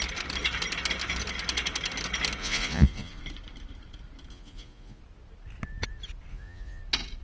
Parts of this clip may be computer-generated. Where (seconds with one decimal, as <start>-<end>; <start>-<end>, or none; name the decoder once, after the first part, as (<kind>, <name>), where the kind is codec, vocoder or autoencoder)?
2.4-3.2 (vocoder, Vocos); 4.3-5.0; 6.3-6.8